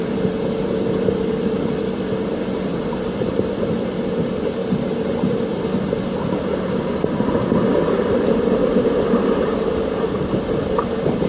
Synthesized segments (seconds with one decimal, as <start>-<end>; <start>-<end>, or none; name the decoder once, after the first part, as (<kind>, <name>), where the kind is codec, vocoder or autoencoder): 0.0-4.6 (vocoder, BigVGAN v2); 6.6-8.6; 9.5-11.3